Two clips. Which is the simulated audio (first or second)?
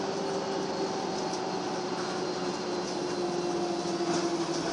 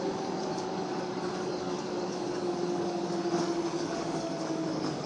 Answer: second